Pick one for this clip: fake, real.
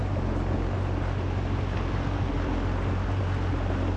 real